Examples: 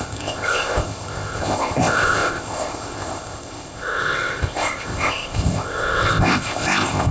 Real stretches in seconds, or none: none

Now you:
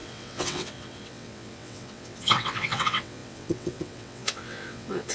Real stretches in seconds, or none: none